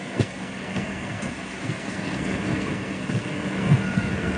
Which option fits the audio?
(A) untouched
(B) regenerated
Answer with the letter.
B